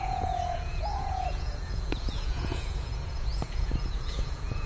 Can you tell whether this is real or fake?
fake